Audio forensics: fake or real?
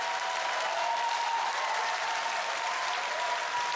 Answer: real